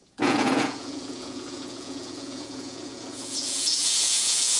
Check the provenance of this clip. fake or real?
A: fake